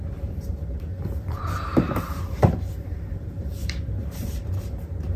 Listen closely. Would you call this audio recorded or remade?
remade